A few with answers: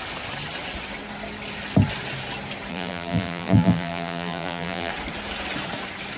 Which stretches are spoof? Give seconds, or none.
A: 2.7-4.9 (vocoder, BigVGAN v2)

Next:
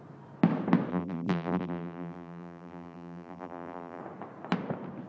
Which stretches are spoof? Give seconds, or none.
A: 0.9-4.0 (vocoder, BigVGAN v2)

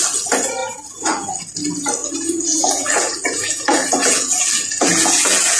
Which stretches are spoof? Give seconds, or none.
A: 0.6-1.3 (vocoder, BigVGAN v2); 2.0-5.6

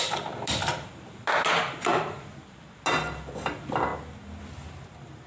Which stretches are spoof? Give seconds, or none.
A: 0.6-1.2 (vocoder, BigVGAN v2); 1.9-2.6